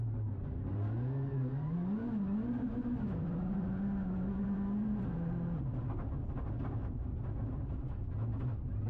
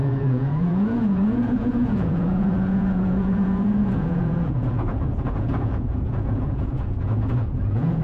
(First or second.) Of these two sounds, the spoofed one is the second